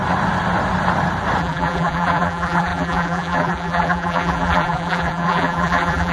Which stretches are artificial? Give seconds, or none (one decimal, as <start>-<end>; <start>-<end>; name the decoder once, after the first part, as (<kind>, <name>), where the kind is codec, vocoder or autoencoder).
1.4-6.1 (vocoder, BigVGAN v2)